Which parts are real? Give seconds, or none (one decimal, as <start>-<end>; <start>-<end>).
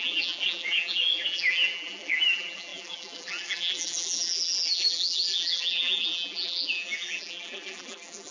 none